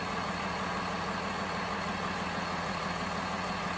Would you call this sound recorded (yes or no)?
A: no